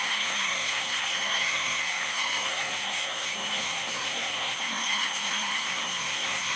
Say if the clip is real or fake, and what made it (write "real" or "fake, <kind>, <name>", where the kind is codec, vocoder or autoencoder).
fake, codec, SNAC